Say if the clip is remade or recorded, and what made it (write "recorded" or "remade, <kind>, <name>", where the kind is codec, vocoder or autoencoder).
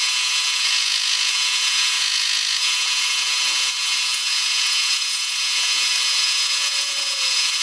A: remade, vocoder, Vocos